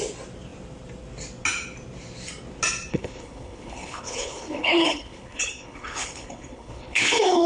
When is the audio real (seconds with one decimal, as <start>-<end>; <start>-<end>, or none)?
0.0-2.9